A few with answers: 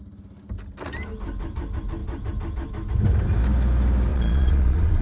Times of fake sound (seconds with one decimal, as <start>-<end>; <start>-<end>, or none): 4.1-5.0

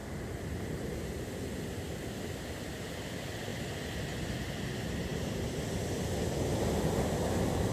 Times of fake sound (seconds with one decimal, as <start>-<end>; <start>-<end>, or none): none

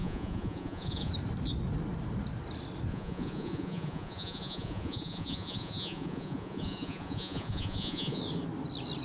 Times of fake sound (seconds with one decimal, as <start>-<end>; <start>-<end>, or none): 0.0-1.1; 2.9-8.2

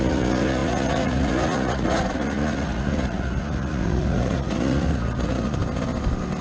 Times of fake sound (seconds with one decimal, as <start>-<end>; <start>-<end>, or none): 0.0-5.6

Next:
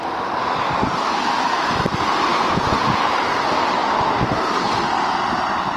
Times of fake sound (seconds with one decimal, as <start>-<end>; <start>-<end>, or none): 2.3-3.0